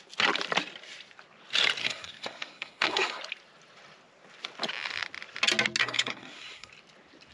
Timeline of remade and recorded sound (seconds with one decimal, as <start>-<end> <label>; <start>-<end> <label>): 0.0-1.8 recorded; 1.8-3.2 remade; 3.2-5.8 recorded; 5.8-6.7 remade; 6.7-7.3 recorded